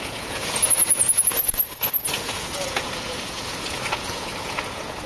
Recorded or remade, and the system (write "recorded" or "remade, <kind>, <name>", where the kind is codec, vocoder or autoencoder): remade, vocoder, Vocos